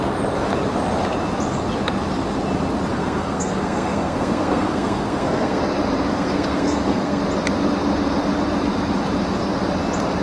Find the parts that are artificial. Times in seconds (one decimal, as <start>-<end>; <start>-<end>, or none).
2.9-5.6; 6.1-7.2